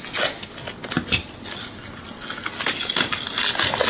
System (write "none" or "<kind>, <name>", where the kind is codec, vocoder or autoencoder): none